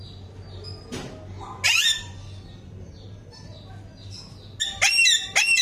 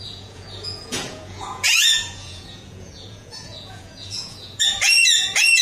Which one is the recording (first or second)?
first